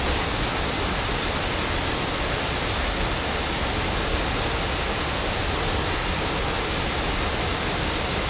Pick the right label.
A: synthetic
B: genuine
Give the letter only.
B